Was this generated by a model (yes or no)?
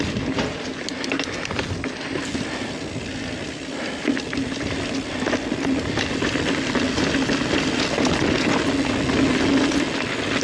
no